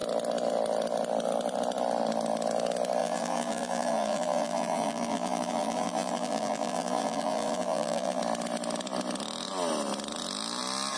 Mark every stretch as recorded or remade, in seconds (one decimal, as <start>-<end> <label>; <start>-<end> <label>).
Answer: 0.0-3.0 recorded; 3.0-8.2 remade; 8.2-11.0 recorded